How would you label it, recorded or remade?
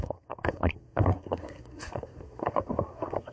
remade